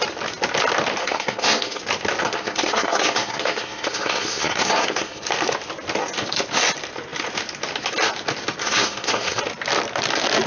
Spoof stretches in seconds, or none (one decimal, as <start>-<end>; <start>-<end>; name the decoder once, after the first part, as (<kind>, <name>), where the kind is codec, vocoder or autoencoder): 1.0-1.8 (codec, SNAC); 2.2-5.2; 8.6-9.4